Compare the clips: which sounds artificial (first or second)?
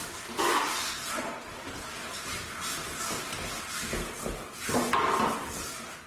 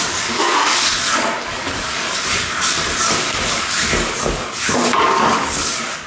second